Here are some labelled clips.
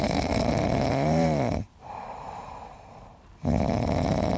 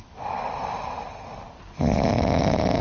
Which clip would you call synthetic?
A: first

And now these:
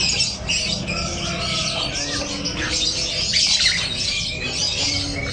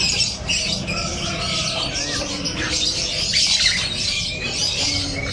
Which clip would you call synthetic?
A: second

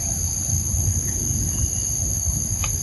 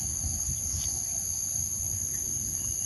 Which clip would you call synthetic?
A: first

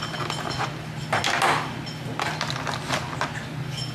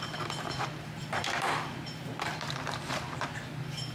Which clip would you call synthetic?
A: second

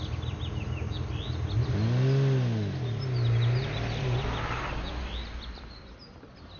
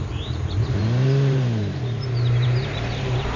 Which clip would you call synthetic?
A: second